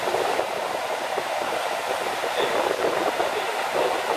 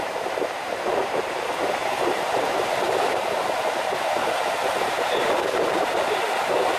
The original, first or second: first